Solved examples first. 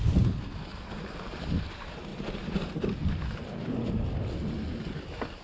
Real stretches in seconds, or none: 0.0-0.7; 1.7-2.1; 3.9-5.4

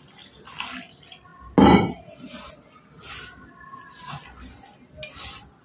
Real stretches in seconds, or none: 0.0-5.6

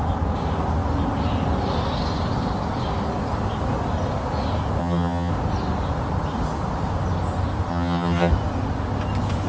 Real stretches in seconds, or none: 0.0-4.8; 5.3-7.7; 8.3-9.5

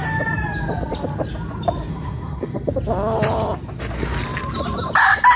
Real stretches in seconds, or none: 0.0-1.9; 2.7-5.4

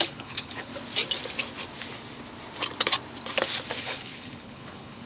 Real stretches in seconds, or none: 0.7-3.8